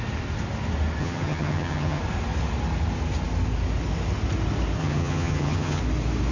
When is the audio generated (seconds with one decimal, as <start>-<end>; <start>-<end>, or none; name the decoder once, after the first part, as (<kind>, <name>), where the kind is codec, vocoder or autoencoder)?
1.0-2.0 (vocoder, HiFi-GAN); 4.8-5.8